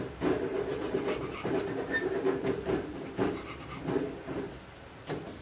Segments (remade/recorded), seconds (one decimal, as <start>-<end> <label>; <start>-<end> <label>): 0.0-0.5 recorded; 0.5-3.7 remade; 3.7-5.4 recorded